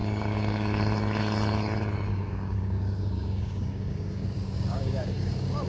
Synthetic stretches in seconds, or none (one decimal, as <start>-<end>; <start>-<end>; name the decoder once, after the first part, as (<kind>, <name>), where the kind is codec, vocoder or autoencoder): 0.0-0.8 (codec, DAC); 2.1-5.7